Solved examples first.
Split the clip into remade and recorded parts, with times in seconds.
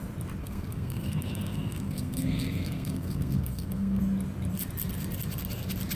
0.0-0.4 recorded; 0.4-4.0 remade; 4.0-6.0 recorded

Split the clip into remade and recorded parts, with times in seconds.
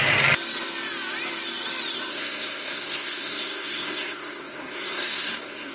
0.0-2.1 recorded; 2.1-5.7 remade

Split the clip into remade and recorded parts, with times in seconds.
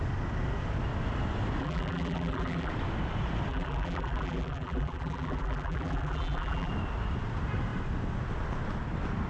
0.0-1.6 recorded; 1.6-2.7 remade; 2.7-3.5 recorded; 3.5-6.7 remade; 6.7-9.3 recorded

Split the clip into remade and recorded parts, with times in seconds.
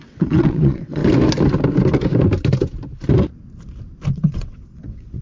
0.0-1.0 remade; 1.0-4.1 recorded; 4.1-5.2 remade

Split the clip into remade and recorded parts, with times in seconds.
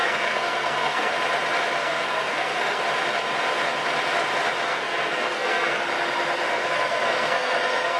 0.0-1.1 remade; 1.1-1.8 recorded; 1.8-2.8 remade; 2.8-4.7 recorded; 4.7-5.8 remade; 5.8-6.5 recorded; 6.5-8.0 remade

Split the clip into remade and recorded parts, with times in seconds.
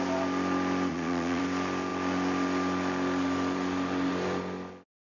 0.0-0.9 recorded; 0.9-1.4 remade; 1.4-5.1 recorded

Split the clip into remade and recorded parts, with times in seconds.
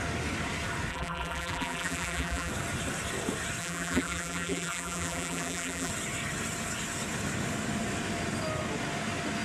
0.0-0.9 recorded; 0.9-2.5 remade; 2.5-3.6 recorded; 3.6-5.9 remade; 5.9-9.4 recorded